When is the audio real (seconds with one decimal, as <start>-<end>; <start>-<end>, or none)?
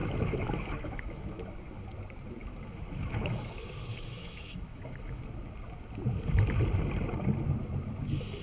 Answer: 1.4-2.4; 3.5-3.9; 5.2-8.4